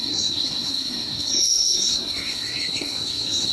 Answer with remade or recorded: remade